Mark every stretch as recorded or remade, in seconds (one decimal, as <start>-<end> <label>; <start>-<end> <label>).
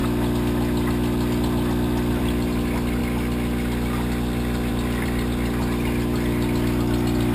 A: 0.0-2.2 recorded; 2.2-3.0 remade; 3.0-4.7 recorded; 4.7-7.3 remade